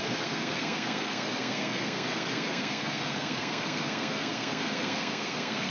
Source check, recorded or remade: remade